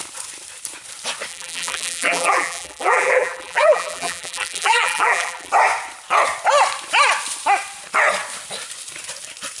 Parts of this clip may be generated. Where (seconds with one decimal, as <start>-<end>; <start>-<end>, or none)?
1.3-5.5